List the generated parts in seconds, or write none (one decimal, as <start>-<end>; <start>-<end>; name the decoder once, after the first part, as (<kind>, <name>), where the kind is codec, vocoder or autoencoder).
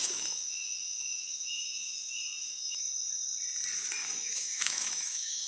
0.0-2.8 (autoencoder, DAC-VAE); 4.0-5.5